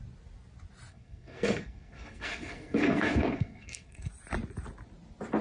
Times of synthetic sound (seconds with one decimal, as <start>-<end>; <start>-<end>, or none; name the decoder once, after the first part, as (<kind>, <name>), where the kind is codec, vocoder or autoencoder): 0.9-4.1 (codec, SNAC)